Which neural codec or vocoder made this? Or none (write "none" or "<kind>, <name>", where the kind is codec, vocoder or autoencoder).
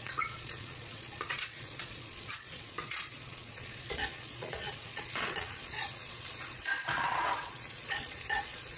vocoder, Vocos